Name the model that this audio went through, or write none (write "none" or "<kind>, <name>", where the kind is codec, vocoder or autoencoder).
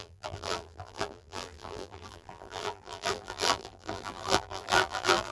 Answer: vocoder, BigVGAN v2